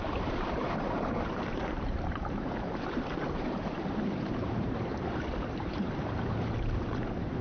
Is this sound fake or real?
fake